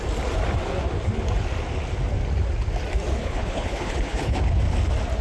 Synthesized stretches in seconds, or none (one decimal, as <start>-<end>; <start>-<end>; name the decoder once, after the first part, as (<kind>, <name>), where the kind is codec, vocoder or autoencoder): 3.2-4.6 (codec, HILCodec)